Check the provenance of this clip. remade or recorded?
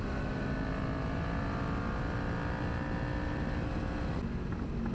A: recorded